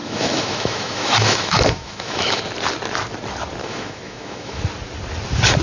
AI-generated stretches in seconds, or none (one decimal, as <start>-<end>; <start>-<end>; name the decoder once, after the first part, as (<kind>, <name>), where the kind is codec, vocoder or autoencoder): 0.0-2.4 (autoencoder, DAC-VAE); 3.6-4.6